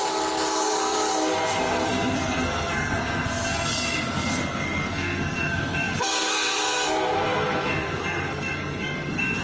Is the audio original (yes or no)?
no